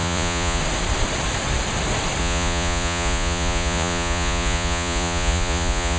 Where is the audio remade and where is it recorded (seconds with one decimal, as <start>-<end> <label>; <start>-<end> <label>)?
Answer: 0.0-0.6 remade; 0.6-2.2 recorded; 2.2-6.0 remade